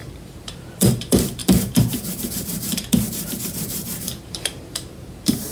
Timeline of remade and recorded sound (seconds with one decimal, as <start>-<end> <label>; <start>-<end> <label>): 0.0-5.5 remade